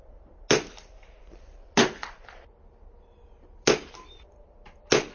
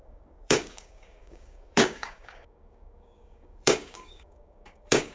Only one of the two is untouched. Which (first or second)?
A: first